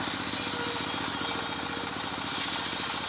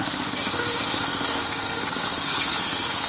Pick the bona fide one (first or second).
first